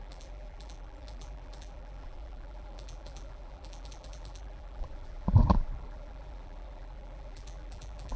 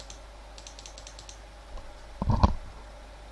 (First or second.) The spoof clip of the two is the first